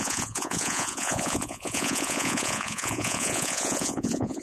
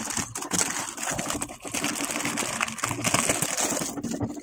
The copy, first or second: first